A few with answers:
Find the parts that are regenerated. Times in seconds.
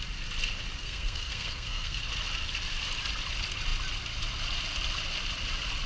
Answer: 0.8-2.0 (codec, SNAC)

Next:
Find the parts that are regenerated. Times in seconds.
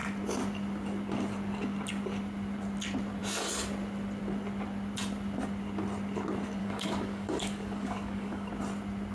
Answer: 6.6-8.5 (codec, DAC)